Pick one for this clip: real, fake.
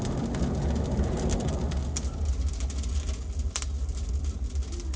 real